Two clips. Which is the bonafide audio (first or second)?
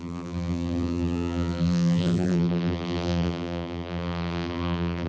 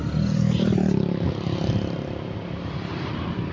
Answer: second